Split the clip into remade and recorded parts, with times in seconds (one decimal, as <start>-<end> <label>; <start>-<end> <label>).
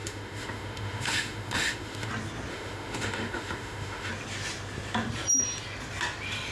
0.0-2.1 remade; 2.1-2.5 recorded; 2.5-4.1 remade; 4.1-6.5 recorded